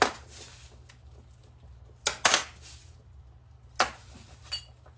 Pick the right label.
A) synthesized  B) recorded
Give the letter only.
B